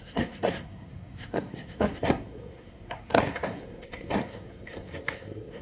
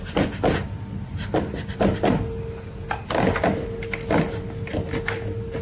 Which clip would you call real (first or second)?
second